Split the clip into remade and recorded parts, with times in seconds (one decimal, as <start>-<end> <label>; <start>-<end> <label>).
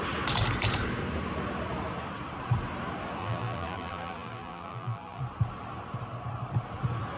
0.0-3.2 recorded; 3.2-5.2 remade; 5.2-7.2 recorded